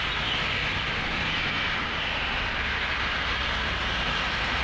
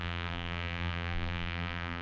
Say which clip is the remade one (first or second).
second